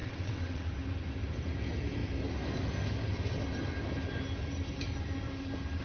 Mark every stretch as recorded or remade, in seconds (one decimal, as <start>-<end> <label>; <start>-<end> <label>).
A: 0.0-0.7 remade; 0.7-5.8 recorded